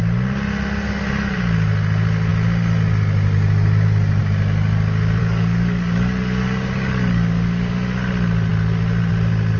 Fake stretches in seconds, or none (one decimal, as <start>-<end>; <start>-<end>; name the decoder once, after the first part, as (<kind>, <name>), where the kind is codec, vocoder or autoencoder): 5.2-7.7 (codec, DAC)